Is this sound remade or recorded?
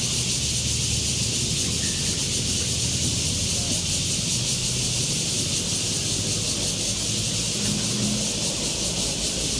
recorded